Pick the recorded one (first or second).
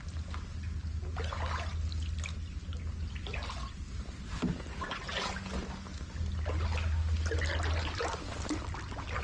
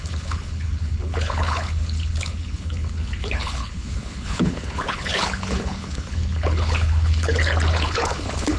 first